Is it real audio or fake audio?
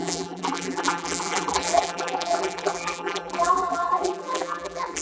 fake